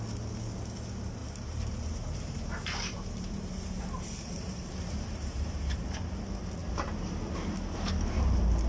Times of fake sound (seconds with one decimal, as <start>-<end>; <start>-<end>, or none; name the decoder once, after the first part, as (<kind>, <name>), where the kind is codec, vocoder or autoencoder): 1.2-5.8 (vocoder, BigVGAN v2)